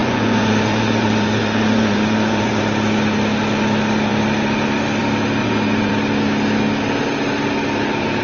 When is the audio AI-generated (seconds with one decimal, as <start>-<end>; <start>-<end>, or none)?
0.0-2.6; 5.4-5.9